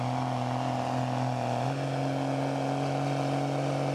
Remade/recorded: recorded